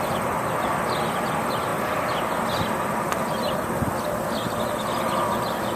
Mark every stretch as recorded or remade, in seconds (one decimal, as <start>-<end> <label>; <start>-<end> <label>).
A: 0.0-1.7 remade; 1.7-5.2 recorded; 5.2-5.8 remade